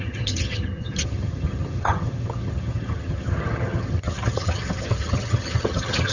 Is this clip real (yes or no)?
no